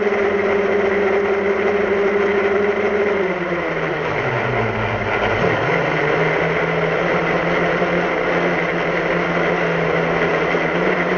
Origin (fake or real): real